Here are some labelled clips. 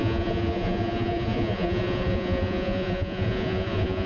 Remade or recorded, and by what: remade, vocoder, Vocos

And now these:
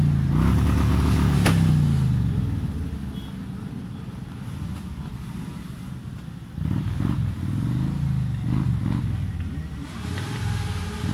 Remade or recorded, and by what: recorded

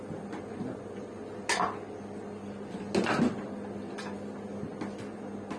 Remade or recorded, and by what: recorded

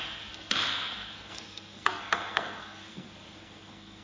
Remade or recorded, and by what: remade, codec, SNAC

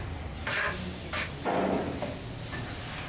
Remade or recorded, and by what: recorded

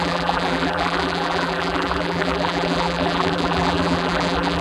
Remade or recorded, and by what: remade, vocoder, BigVGAN v2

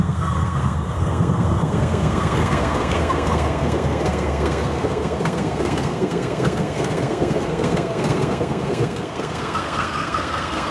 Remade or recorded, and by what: remade, codec, SNAC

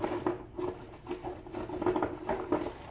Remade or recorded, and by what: recorded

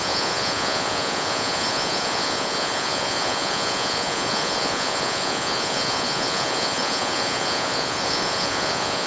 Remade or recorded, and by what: remade, vocoder, Vocos